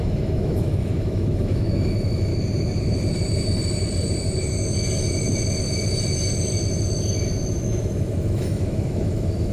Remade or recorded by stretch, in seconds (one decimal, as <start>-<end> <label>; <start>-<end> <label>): 0.0-2.3 remade; 2.3-7.6 recorded; 7.6-9.5 remade